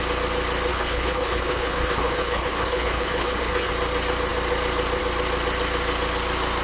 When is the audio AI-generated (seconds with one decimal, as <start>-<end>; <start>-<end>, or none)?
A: 0.7-3.7